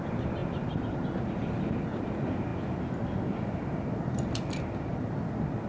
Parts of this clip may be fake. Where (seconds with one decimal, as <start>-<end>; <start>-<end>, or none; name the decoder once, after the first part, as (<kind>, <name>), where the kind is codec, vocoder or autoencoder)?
none